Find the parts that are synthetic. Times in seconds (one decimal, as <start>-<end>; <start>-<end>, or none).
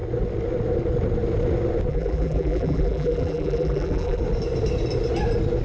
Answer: 1.9-4.2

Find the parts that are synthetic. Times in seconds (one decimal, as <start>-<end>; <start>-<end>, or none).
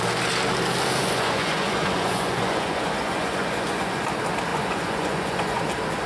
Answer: 1.0-4.0; 4.5-5.6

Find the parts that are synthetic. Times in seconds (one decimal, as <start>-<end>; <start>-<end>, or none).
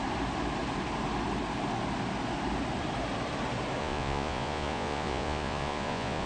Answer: 3.8-6.3